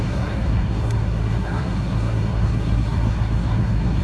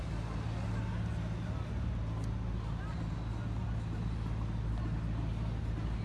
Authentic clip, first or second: second